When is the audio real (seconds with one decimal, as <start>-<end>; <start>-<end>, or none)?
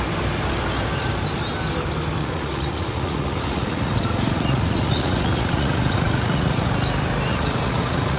0.0-2.2; 6.7-7.3